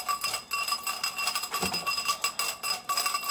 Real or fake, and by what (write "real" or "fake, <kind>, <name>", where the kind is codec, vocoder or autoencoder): real